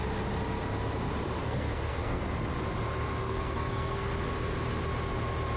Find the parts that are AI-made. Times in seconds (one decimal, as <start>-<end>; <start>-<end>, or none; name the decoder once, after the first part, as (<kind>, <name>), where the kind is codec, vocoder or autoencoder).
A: 1.4-2.2 (codec, SNAC); 3.2-4.1